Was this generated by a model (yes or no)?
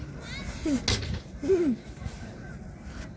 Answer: no